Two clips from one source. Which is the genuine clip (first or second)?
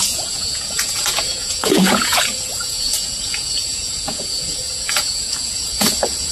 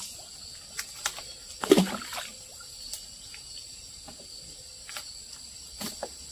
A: second